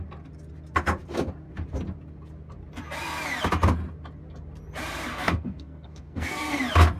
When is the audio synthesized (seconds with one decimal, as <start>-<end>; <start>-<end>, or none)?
5.1-6.6